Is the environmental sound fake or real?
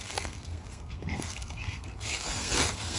fake